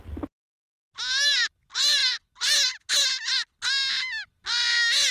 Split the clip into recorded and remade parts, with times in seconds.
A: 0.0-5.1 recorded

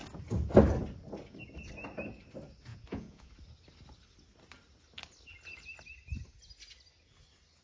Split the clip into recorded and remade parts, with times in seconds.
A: 0.0-2.7 recorded; 2.7-3.3 remade; 3.3-7.6 recorded

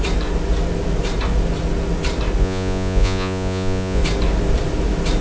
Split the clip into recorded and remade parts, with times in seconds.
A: 0.0-2.4 recorded; 2.4-4.0 remade; 4.0-5.2 recorded

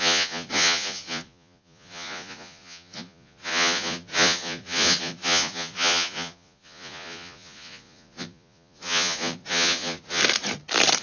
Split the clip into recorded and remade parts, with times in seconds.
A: 0.0-10.2 remade; 10.2-11.0 recorded

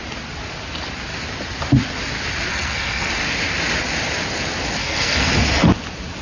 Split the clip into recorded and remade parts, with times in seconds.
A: 0.0-2.5 recorded; 2.5-3.1 remade; 3.1-4.8 recorded; 4.8-5.3 remade; 5.3-6.2 recorded

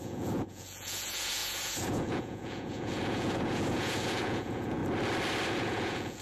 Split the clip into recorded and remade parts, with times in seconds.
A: 0.0-4.8 remade; 4.8-5.5 recorded; 5.5-6.2 remade